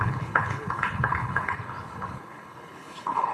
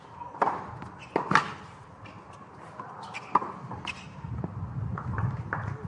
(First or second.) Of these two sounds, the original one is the second